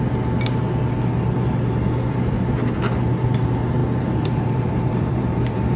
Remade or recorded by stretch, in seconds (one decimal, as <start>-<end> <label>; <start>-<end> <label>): 0.0-3.8 recorded; 3.8-5.8 remade